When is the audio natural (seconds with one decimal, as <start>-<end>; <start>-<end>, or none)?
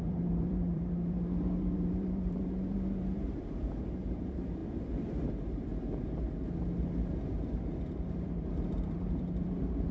5.7-7.2